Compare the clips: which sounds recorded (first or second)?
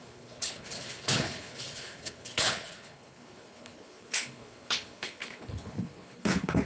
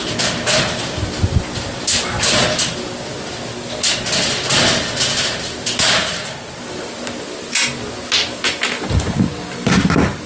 second